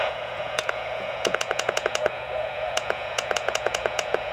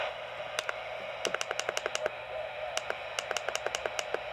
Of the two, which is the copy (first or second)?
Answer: first